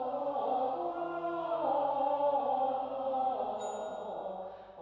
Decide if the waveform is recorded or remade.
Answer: recorded